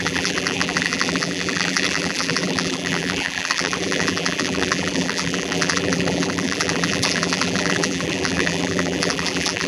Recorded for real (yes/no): no